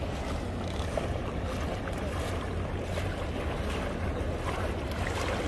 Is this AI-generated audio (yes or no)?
no